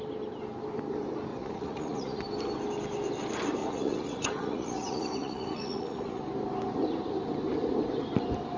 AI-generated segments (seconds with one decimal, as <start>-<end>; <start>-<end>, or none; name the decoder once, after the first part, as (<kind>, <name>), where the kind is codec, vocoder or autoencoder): 1.3-2.2 (vocoder, Vocos); 3.6-6.2